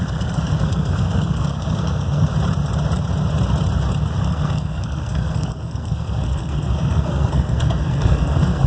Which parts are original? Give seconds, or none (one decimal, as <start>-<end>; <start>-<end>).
2.3-4.2